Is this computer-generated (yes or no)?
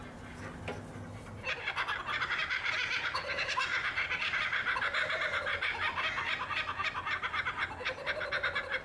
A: no